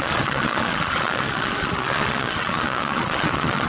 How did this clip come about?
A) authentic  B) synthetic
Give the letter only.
B